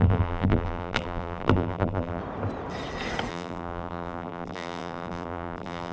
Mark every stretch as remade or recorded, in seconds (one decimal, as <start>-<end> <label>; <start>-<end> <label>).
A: 0.0-2.2 remade; 2.2-3.3 recorded; 3.3-5.9 remade